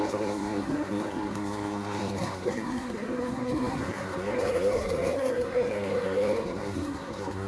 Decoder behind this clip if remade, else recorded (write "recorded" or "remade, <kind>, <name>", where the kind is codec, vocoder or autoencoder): remade, codec, SNAC